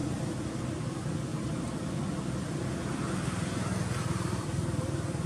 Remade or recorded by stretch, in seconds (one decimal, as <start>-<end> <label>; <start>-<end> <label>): 0.0-0.6 remade; 0.6-5.3 recorded